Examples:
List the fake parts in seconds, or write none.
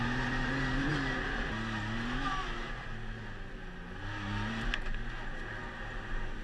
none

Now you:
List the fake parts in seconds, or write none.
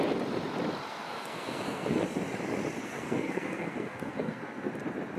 0.9-2.0; 2.8-4.7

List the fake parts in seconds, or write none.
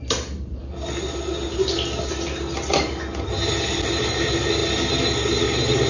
none